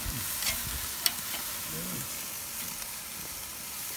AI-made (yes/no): no